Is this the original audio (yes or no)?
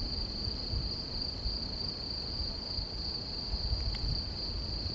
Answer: yes